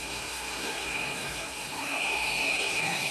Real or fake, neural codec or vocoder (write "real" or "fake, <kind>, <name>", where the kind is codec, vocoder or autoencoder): fake, codec, SNAC